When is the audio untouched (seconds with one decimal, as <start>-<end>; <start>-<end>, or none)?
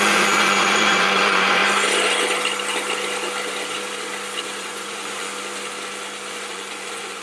1.6-4.6; 5.3-6.3